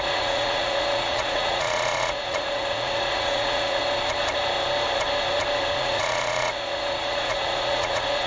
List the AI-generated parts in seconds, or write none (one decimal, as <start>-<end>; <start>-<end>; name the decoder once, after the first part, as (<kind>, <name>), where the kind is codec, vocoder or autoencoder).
0.0-3.8 (vocoder, Vocos); 5.8-8.3